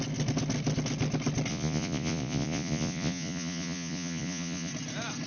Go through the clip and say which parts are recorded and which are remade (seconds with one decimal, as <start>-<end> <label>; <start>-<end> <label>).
0.0-1.5 recorded; 1.5-4.7 remade; 4.7-5.3 recorded